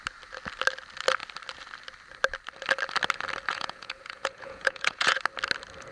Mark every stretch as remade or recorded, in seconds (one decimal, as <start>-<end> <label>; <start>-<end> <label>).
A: 0.0-3.5 recorded; 3.5-5.2 remade; 5.2-5.9 recorded